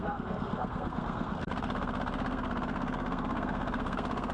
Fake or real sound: fake